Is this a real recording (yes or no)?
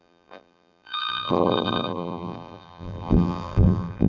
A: no